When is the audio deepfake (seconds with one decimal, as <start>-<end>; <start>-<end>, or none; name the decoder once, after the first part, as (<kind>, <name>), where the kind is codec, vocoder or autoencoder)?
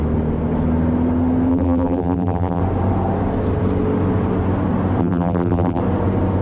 1.5-2.6 (vocoder, BigVGAN v2); 5.0-5.8